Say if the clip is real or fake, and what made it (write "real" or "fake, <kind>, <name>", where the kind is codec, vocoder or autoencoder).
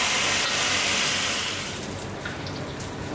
real